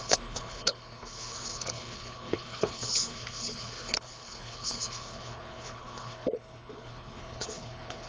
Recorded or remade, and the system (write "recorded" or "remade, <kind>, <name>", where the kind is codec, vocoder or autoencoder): remade, codec, HILCodec